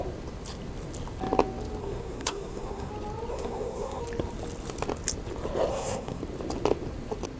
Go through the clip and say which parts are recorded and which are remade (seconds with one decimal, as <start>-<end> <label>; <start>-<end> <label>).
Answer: 0.0-1.8 recorded; 1.8-2.9 remade; 2.9-3.3 recorded; 3.3-4.0 remade; 4.0-5.7 recorded; 5.7-6.2 remade; 6.2-7.4 recorded